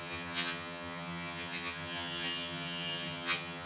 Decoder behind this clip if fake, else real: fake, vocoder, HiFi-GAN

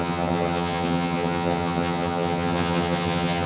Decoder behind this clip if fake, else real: fake, vocoder, HiFi-GAN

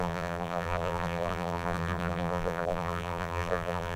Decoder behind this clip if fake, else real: fake, vocoder, BigVGAN v2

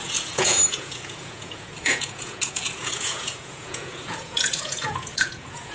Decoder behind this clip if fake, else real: fake, vocoder, Vocos